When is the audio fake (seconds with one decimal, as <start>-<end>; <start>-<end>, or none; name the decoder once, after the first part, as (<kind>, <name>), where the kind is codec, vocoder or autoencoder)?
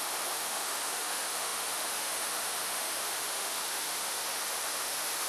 0.0-5.3 (autoencoder, DAC-VAE)